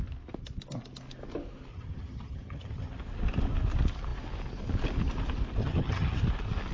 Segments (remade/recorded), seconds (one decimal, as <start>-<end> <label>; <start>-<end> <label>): 0.0-1.7 recorded; 1.7-2.9 remade; 2.9-5.6 recorded; 5.6-6.2 remade; 6.2-6.7 recorded